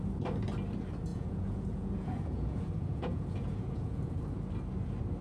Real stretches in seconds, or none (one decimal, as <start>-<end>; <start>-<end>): 0.0-1.1; 4.2-5.2